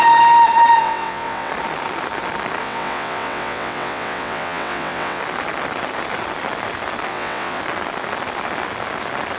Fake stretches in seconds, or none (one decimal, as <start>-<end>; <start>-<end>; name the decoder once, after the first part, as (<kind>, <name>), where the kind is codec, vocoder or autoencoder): 0.8-1.5 (vocoder, WaveNeXt); 2.6-5.2; 7.1-7.6